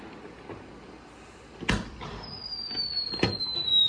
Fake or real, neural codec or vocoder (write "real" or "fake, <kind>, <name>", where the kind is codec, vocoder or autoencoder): real